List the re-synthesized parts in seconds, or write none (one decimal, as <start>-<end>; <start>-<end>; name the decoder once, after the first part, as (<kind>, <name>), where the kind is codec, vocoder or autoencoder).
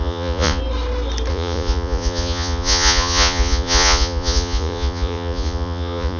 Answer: 0.0-0.6 (vocoder, Vocos); 1.3-6.2